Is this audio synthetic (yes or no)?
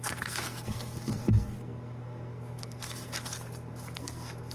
yes